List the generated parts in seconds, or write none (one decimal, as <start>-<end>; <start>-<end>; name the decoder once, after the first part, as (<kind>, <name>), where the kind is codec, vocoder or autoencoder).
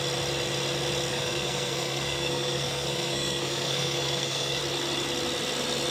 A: 1.1-4.6 (codec, SNAC)